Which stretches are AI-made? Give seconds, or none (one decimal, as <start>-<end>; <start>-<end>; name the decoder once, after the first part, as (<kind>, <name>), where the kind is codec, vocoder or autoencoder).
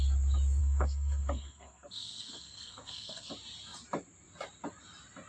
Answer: 0.6-3.3 (codec, SNAC)